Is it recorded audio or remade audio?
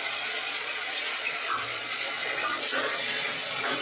remade